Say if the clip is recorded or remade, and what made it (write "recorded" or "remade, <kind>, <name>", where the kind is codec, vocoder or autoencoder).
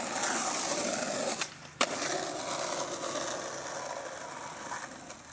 recorded